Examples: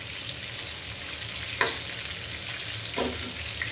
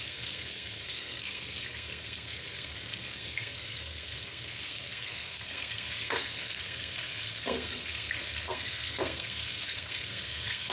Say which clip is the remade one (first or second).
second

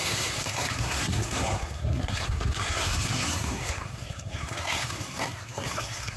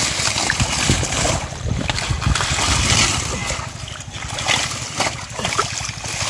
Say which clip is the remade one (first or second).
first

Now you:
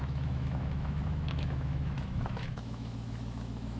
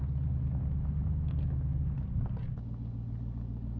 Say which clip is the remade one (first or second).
first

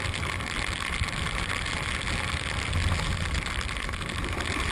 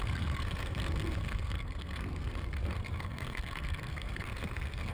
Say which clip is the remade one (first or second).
second